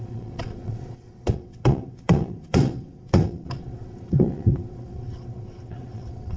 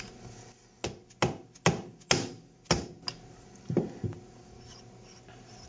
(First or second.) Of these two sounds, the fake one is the first